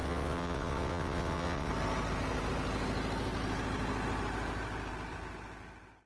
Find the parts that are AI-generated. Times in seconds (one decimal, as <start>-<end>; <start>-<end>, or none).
0.0-1.7

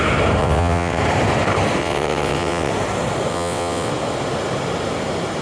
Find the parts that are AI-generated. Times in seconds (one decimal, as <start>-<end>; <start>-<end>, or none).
0.4-1.0; 1.8-2.7; 3.3-3.9